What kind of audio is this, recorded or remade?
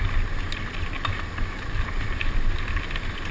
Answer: recorded